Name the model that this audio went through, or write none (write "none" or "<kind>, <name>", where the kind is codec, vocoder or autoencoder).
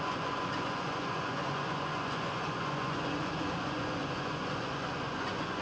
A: vocoder, Vocos